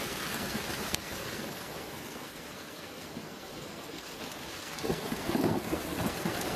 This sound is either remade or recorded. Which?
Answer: remade